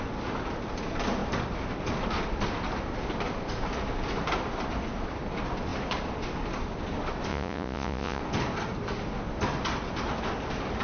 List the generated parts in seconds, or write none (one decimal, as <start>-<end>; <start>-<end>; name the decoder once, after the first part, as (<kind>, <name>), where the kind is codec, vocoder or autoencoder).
7.3-8.2 (vocoder, Vocos)